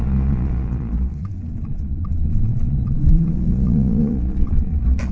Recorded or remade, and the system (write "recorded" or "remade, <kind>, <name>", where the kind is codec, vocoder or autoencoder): remade, vocoder, Vocos